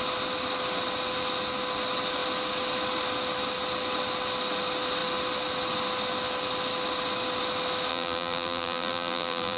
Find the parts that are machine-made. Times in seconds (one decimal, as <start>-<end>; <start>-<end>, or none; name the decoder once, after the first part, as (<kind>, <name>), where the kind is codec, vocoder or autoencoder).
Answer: 7.9-9.6 (vocoder, BigVGAN v2)